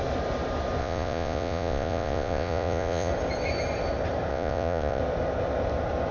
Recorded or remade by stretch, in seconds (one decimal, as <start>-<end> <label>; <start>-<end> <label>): 0.0-0.8 recorded; 0.8-3.1 remade; 3.1-4.3 recorded; 4.3-5.0 remade; 5.0-6.1 recorded